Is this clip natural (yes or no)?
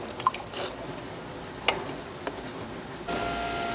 yes